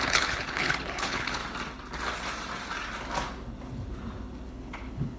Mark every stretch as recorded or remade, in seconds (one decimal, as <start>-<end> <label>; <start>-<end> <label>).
0.0-1.4 remade; 1.4-4.5 recorded; 4.5-5.2 remade